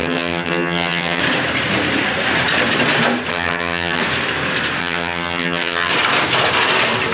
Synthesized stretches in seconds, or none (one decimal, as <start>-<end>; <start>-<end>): 0.0-1.2; 3.3-4.0; 4.8-5.9